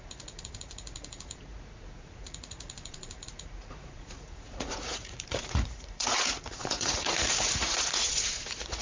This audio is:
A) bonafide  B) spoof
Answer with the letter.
B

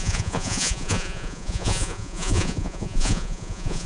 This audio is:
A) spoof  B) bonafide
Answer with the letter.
A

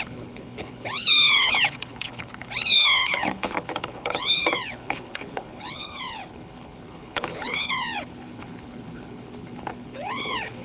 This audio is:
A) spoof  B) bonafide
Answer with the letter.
A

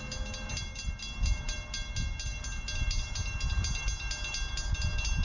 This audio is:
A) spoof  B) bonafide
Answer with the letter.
B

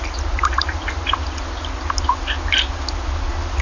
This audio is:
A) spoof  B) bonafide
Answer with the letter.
B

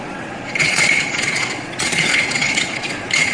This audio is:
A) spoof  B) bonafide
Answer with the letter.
A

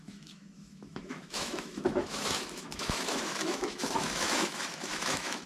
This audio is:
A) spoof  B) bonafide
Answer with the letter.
A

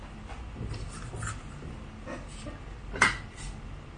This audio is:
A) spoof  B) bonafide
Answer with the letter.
B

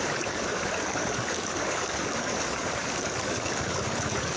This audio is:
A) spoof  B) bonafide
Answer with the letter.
A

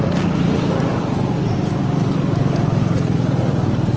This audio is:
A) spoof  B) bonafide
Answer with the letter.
B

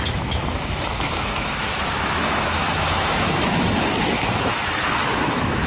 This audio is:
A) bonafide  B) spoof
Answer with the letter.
B